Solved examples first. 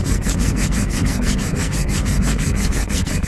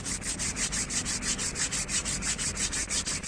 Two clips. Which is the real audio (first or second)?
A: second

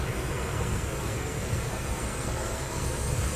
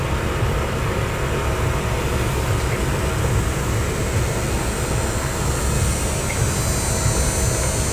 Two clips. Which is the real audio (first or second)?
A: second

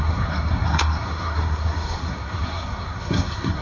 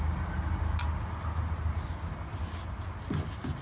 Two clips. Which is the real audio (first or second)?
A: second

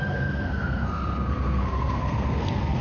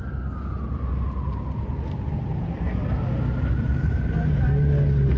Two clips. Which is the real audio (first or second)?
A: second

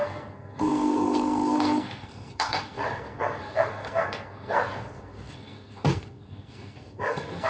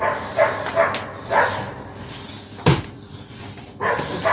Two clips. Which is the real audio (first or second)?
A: second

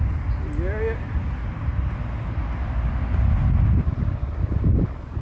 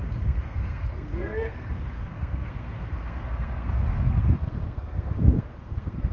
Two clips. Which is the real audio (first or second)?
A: first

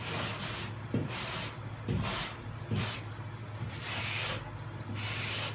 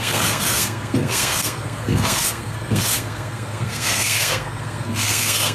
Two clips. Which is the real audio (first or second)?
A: first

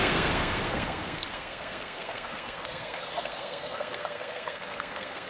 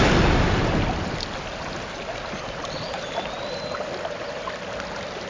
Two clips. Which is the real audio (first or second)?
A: second